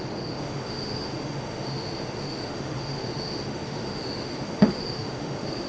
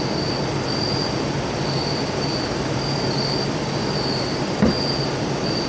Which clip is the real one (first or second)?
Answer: second